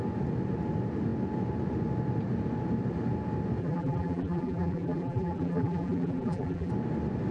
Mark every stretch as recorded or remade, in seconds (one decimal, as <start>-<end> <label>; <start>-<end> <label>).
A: 0.0-3.6 recorded; 3.6-6.7 remade; 6.7-7.3 recorded